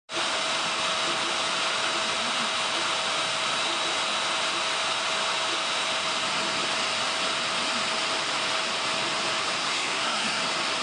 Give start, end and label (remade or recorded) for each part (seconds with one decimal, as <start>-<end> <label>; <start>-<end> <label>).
0.0-9.6 recorded; 9.6-10.4 remade; 10.4-10.8 recorded